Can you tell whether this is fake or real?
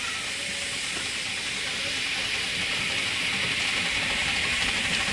real